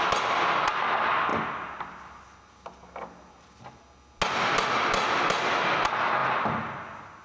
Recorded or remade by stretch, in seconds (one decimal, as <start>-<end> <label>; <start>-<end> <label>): 0.0-7.2 recorded